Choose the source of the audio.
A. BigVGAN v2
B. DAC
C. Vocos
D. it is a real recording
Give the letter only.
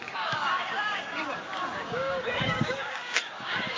B